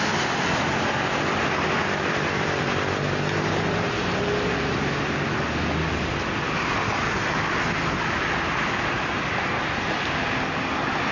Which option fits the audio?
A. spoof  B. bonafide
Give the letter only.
B